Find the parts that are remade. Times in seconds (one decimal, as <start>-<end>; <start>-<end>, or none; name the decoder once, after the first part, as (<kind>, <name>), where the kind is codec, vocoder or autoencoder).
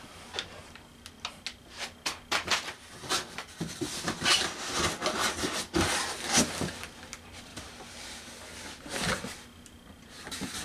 7.5-8.3 (vocoder, BigVGAN v2)